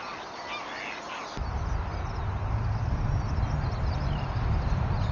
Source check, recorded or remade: recorded